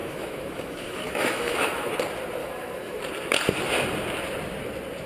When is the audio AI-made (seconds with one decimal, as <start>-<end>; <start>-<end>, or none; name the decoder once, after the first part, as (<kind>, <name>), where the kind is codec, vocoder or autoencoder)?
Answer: 0.0-1.9 (autoencoder, DAC-VAE); 2.4-3.0